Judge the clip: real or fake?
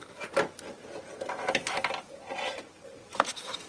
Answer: real